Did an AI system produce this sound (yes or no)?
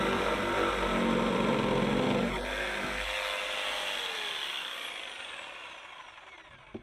no